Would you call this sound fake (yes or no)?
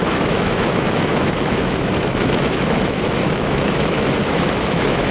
yes